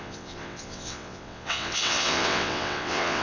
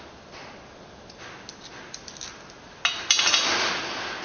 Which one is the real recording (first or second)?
second